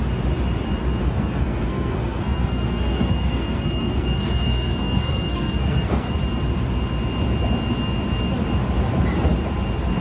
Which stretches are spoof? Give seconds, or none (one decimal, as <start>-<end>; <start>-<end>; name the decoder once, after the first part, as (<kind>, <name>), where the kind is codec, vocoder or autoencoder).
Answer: 1.0-6.2 (codec, SNAC)